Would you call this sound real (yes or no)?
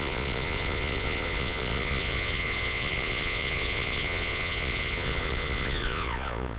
no